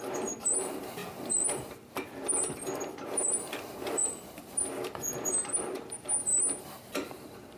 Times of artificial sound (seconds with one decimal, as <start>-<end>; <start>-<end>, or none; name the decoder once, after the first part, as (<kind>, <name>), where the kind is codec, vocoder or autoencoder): 0.0-1.0 (vocoder, BigVGAN v2); 1.7-7.6